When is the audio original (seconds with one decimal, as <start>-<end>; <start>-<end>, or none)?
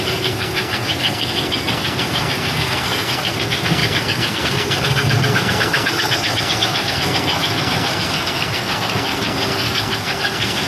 none